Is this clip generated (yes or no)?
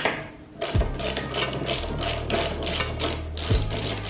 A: no